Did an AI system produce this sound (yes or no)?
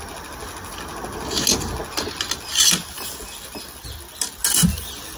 no